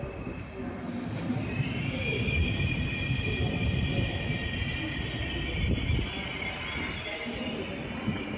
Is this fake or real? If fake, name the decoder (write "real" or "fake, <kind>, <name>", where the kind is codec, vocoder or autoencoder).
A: real